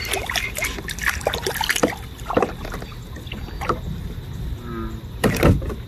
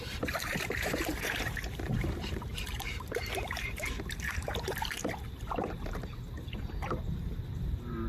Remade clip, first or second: second